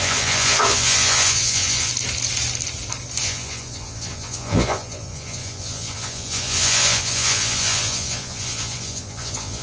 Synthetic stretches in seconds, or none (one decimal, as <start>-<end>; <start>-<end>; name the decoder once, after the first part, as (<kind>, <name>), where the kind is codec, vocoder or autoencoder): 0.0-1.9 (vocoder, Vocos); 3.2-9.6